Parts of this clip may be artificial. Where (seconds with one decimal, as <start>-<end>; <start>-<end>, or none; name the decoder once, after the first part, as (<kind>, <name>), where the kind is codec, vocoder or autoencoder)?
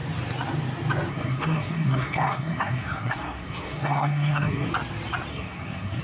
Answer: 1.1-4.7 (codec, SNAC); 5.3-6.0